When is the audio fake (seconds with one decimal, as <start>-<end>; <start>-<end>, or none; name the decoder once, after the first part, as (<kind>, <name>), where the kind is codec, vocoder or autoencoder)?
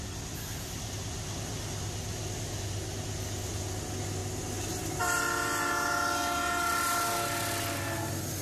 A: none